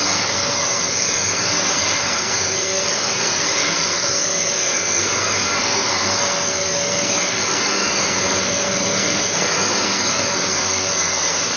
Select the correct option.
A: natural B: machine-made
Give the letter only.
B